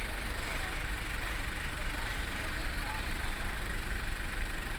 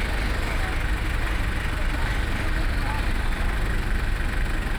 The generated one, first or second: first